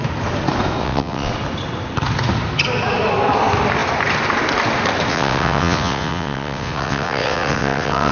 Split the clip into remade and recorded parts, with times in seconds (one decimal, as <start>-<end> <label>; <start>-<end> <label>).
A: 0.0-0.8 recorded; 0.8-1.3 remade; 1.3-5.1 recorded; 5.1-8.1 remade